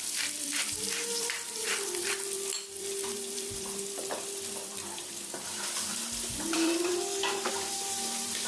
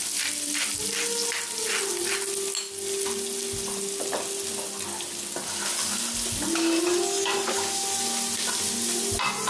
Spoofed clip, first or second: first